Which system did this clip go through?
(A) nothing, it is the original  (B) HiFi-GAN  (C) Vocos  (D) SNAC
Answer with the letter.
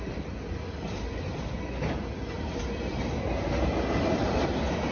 A